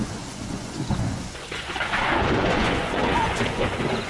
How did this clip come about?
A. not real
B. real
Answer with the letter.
A